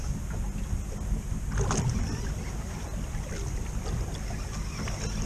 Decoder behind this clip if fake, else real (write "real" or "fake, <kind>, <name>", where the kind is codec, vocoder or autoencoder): real